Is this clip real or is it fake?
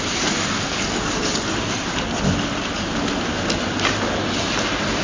real